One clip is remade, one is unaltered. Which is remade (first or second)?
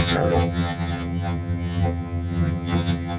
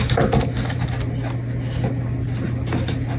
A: first